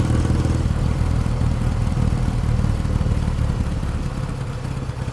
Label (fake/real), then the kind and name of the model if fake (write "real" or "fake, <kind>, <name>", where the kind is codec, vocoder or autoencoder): real